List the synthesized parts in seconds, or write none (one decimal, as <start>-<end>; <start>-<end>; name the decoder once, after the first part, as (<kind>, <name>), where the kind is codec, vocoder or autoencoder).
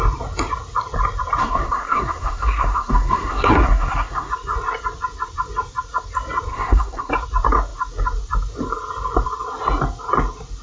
1.4-4.3 (codec, SNAC); 6.5-7.1